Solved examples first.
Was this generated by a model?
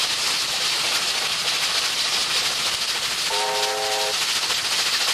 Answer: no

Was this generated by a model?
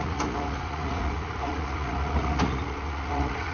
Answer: yes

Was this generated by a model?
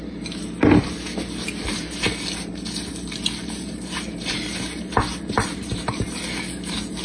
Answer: yes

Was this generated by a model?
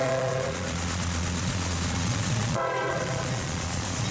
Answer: yes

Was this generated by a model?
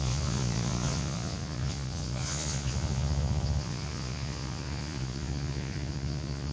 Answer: yes